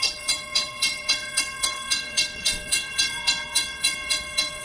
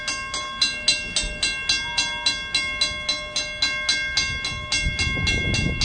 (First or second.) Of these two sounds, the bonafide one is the second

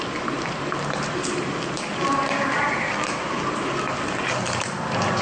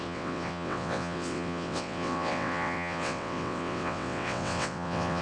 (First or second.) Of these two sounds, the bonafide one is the first